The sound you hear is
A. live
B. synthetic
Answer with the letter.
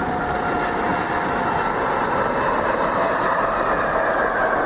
A